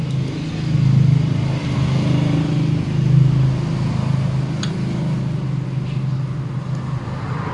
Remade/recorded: recorded